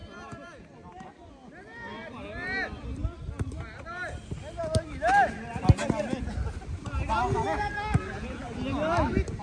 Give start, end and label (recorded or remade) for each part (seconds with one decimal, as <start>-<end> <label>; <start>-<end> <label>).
0.0-9.4 recorded

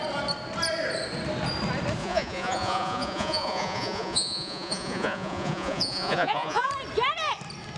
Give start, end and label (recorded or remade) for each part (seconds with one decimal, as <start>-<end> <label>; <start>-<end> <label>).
0.0-2.0 recorded; 2.0-6.7 remade; 6.7-7.8 recorded

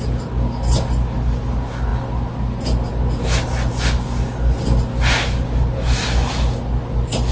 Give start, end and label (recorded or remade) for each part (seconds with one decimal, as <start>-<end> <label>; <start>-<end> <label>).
0.0-7.3 recorded

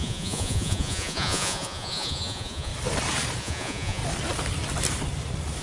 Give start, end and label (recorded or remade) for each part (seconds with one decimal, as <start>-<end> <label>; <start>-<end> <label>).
0.0-2.7 remade; 2.7-3.4 recorded; 3.4-4.0 remade; 4.0-5.6 recorded

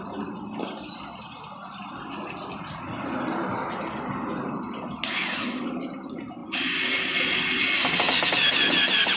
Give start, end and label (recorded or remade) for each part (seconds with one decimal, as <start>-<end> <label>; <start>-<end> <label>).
0.0-9.2 recorded

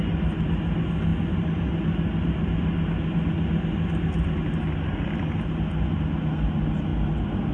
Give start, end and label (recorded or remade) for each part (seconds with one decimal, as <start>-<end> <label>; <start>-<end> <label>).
0.0-7.5 recorded